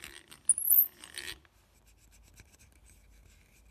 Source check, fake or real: real